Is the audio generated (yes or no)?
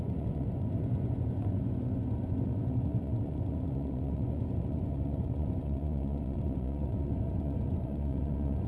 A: yes